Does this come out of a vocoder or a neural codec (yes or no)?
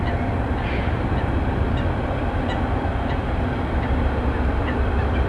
no